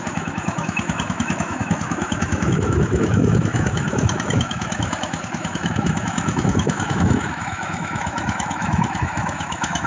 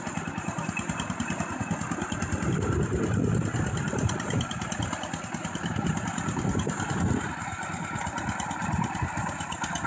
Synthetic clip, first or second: first